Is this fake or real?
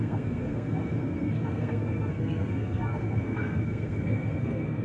fake